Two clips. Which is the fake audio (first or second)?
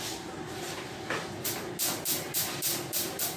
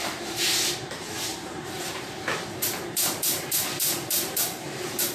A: second